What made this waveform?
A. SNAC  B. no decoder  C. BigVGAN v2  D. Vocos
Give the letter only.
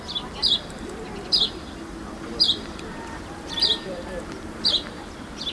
C